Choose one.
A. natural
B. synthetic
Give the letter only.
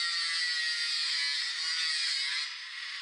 A